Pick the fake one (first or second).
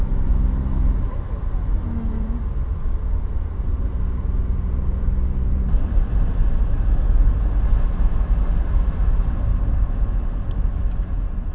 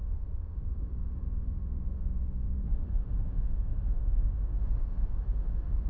second